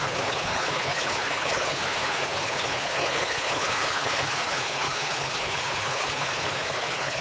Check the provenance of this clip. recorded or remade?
remade